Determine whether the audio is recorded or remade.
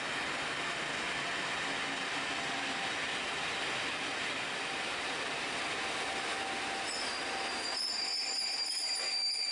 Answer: recorded